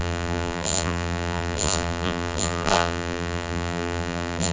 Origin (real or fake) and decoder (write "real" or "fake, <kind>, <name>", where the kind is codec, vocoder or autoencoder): fake, vocoder, BigVGAN v2